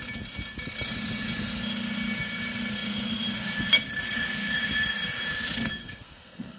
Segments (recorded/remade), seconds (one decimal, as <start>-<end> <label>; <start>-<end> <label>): 0.0-5.8 recorded; 5.8-6.6 remade